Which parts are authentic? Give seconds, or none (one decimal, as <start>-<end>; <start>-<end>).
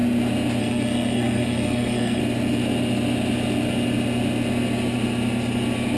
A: 0.0-0.6; 2.2-6.0